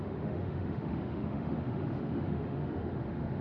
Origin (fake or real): fake